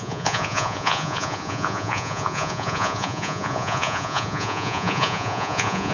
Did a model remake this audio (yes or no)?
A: yes